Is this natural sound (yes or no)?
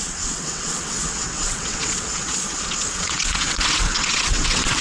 no